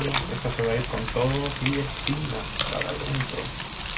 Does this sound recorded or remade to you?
recorded